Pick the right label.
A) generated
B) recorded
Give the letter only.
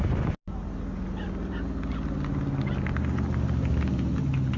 B